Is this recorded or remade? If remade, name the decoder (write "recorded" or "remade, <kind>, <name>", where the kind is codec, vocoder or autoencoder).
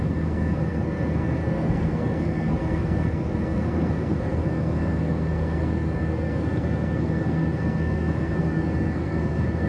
remade, codec, SNAC